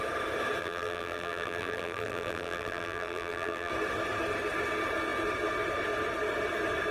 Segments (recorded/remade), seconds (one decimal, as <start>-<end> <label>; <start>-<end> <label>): 0.0-0.6 recorded; 0.6-3.7 remade; 3.7-6.9 recorded